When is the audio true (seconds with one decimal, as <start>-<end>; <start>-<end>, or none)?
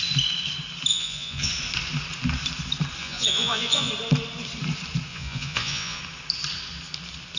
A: 0.0-0.9; 1.5-3.0; 3.9-5.1; 6.0-7.4